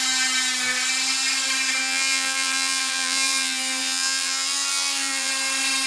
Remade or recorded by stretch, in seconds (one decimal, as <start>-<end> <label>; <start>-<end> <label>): 0.0-1.8 recorded; 1.8-5.3 remade; 5.3-5.9 recorded